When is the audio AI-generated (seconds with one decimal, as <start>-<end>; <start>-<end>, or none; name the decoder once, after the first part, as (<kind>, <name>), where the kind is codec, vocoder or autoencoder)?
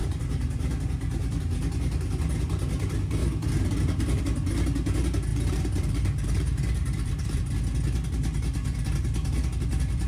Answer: 0.0-1.4 (vocoder, BigVGAN v2); 3.2-4.2; 5.3-7.4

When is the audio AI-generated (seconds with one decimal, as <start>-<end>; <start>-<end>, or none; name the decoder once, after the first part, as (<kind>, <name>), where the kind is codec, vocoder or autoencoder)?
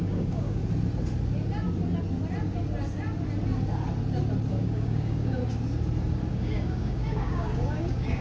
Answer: 0.0-0.6 (codec, DAC); 4.5-5.4; 6.3-8.2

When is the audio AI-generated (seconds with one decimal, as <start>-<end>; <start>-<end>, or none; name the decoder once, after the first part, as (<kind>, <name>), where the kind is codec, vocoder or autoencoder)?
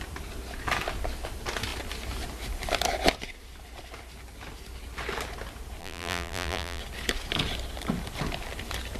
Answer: 5.8-6.8 (vocoder, BigVGAN v2)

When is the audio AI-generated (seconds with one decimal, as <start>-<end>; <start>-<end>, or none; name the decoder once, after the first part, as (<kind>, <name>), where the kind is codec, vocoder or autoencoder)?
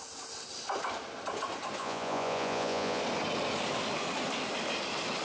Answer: 1.8-3.0 (vocoder, Vocos)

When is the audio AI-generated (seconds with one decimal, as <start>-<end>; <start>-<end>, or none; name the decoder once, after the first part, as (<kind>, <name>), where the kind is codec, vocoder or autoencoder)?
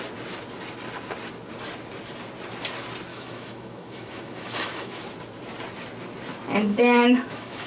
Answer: 3.1-5.0 (autoencoder, DAC-VAE); 6.7-7.7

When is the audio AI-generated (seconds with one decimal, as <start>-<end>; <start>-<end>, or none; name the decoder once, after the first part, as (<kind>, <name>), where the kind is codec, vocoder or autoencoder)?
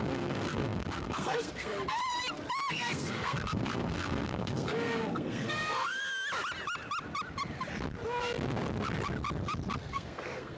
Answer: 0.0-2.0 (codec, SNAC); 2.7-6.0; 9.8-10.6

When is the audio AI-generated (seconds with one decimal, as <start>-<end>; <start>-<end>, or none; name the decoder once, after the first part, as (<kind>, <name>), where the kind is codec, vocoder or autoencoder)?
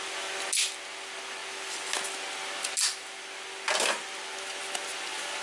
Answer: none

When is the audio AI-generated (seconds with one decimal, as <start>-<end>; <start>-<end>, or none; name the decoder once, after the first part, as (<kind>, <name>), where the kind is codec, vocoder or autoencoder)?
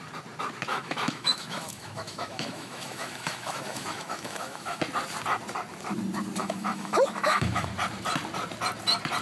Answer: 0.7-4.8 (autoencoder, DAC-VAE); 6.4-7.7